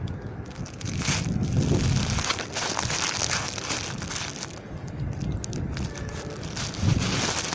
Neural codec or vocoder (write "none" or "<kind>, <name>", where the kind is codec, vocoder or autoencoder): none